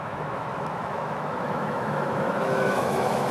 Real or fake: fake